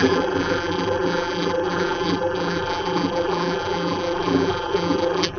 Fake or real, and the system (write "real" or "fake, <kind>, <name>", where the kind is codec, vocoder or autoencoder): fake, vocoder, BigVGAN v2